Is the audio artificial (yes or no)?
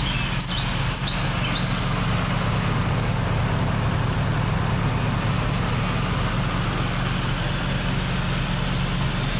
no